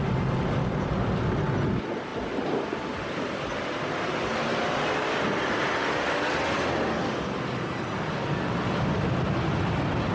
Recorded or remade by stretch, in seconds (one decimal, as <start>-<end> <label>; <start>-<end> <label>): 0.0-10.1 recorded